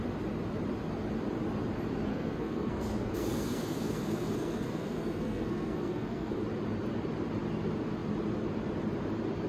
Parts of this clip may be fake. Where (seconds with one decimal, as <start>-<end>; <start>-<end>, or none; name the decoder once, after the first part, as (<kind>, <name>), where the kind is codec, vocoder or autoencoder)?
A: 2.1-6.4 (codec, SNAC)